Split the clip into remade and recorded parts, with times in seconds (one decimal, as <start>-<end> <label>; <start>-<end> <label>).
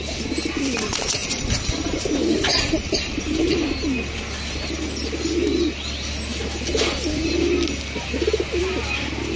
0.0-1.2 recorded; 1.2-4.0 remade; 4.0-9.4 recorded